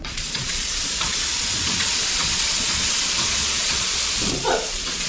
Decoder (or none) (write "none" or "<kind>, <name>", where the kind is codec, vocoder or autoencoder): vocoder, Vocos